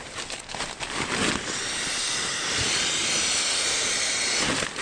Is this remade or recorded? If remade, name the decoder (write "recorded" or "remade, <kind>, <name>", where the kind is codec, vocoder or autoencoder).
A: recorded